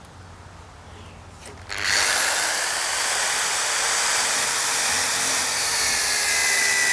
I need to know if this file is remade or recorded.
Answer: recorded